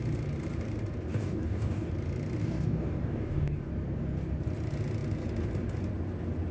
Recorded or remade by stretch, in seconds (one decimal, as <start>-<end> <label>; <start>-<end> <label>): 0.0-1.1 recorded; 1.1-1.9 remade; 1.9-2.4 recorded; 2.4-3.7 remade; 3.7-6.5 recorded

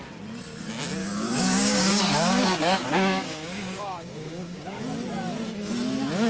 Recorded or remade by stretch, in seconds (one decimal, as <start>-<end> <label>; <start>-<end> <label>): 0.0-1.0 recorded; 1.0-4.8 remade; 4.8-6.3 recorded

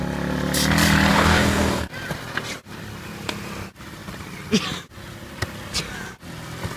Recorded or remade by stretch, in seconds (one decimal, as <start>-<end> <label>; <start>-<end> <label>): 0.0-1.1 recorded; 1.1-1.9 remade; 1.9-6.8 recorded